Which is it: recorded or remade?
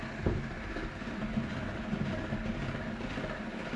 recorded